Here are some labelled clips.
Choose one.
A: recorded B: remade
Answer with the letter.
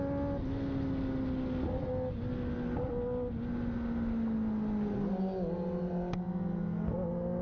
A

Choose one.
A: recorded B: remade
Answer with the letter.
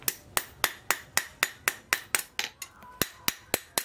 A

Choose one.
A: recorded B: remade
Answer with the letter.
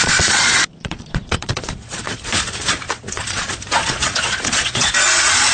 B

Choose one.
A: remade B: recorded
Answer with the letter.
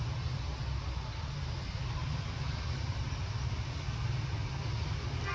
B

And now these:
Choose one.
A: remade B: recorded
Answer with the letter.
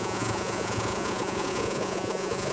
A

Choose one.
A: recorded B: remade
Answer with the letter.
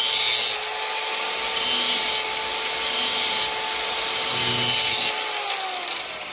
A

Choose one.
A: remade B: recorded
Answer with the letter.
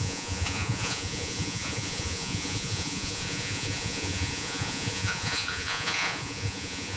A